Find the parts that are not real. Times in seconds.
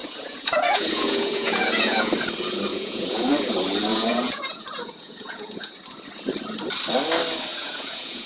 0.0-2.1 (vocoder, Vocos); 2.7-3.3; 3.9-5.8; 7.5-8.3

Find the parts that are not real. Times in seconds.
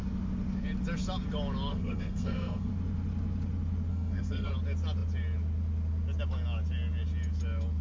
1.7-2.7 (codec, SNAC); 3.9-4.5